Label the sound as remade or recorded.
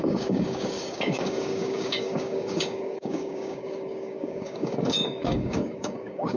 remade